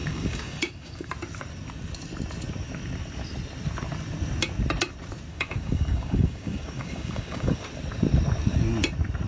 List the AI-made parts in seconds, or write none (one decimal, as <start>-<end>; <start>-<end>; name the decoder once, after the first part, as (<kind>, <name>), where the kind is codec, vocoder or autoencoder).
0.0-1.1 (codec, DAC); 5.3-7.6